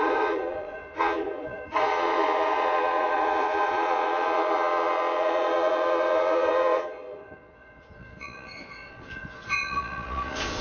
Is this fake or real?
fake